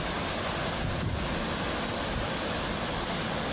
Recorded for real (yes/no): yes